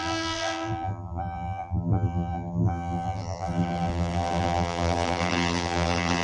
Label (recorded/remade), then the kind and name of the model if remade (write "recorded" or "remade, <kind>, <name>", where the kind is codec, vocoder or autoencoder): remade, vocoder, BigVGAN v2